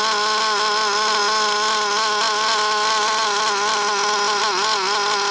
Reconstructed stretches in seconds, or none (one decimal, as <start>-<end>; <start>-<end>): none